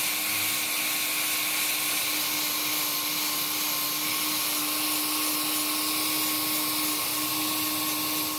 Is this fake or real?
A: real